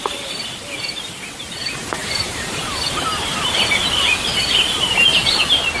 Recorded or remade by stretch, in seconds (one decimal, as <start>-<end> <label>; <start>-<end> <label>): 0.0-2.0 recorded; 2.0-3.5 remade; 3.5-5.8 recorded